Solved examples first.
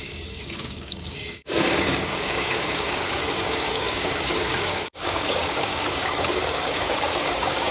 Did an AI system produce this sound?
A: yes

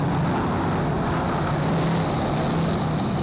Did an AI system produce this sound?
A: no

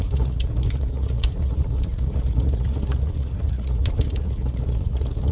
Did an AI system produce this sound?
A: yes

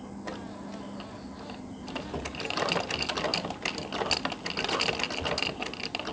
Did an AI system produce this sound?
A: no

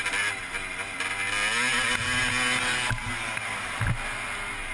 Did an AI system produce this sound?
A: no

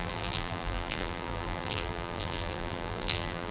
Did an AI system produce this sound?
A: yes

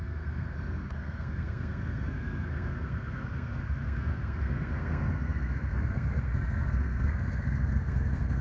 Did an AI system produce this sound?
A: yes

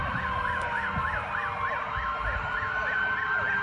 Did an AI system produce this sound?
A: no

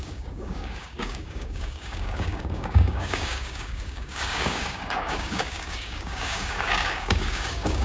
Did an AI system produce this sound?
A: yes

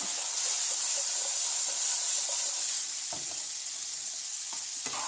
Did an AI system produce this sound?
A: no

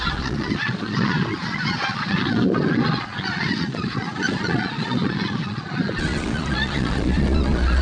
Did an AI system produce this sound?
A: yes